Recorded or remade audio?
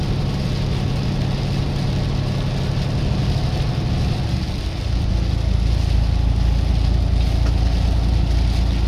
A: recorded